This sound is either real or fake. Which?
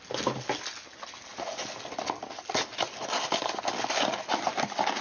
real